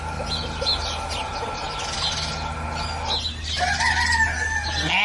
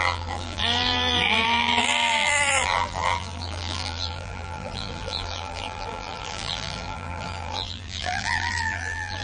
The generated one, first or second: second